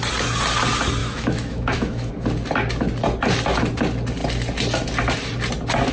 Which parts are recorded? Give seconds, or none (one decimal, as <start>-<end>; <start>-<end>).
0.0-1.0; 2.1-5.9